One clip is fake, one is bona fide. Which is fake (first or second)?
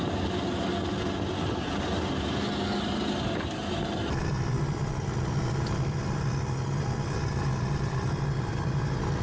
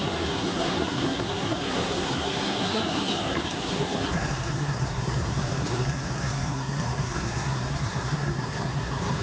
second